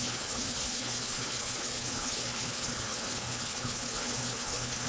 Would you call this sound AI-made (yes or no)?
yes